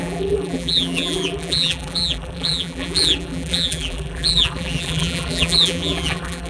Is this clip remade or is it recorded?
remade